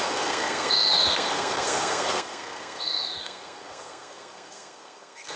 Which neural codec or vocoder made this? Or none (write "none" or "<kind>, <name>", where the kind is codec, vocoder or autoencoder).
codec, SNAC